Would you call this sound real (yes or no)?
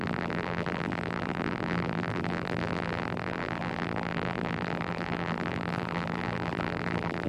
no